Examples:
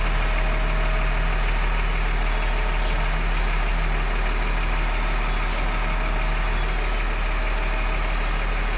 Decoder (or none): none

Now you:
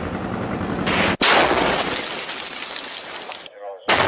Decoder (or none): none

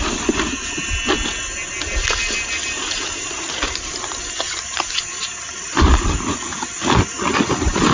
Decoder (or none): none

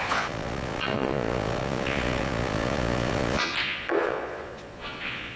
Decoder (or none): vocoder, Vocos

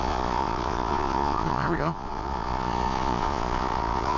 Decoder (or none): vocoder, Vocos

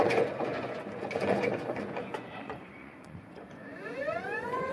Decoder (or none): vocoder, Vocos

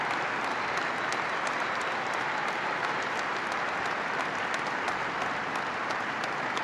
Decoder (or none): none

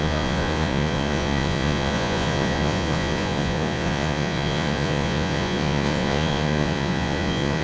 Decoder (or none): vocoder, Vocos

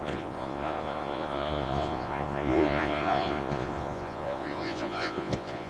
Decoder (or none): vocoder, Vocos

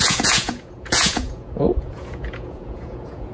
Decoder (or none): vocoder, Vocos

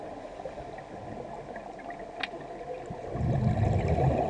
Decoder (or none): none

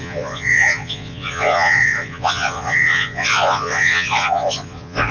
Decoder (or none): vocoder, Vocos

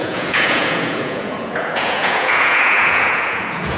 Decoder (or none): vocoder, Vocos